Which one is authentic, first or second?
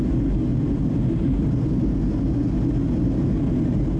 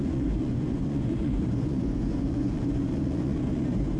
first